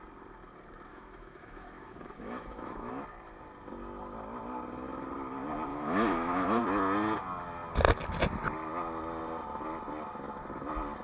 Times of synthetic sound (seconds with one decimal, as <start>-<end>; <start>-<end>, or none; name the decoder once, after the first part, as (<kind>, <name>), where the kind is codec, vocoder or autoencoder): 0.9-2.9 (autoencoder, DAC-VAE); 5.7-6.6